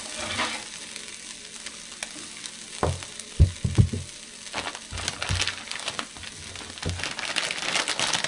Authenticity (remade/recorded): recorded